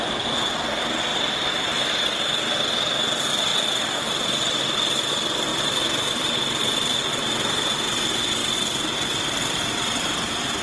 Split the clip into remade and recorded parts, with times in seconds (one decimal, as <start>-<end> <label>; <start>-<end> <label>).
0.0-1.1 recorded; 1.1-2.2 remade; 2.2-5.5 recorded; 5.5-7.0 remade; 7.0-8.4 recorded; 8.4-9.6 remade; 9.6-10.6 recorded